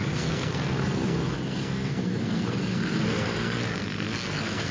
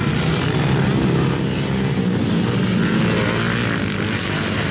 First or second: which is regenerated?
first